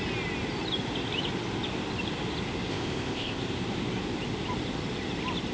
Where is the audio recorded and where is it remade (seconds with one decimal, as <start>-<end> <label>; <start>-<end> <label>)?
0.0-2.7 recorded; 2.7-3.4 remade; 3.4-5.5 recorded